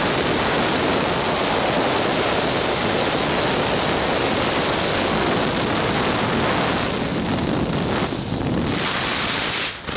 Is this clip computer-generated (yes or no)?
no